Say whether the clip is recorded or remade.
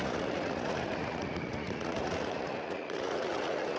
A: remade